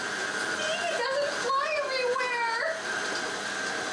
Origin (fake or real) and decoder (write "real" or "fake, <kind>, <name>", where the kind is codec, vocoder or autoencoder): real